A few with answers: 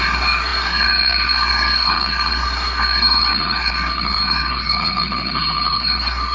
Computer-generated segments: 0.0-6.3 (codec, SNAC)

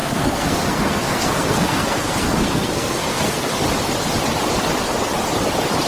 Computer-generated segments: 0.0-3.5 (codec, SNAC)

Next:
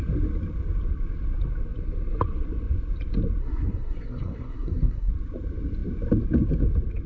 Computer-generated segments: 3.4-5.1 (codec, SNAC)